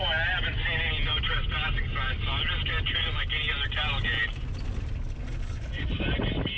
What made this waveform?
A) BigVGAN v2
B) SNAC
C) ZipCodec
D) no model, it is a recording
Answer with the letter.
D